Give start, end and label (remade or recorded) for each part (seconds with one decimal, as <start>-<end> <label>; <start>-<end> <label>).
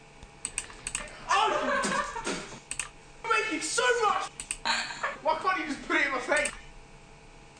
0.0-5.2 recorded; 5.2-6.6 remade; 6.6-7.6 recorded